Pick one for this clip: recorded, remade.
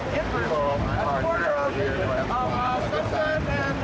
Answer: recorded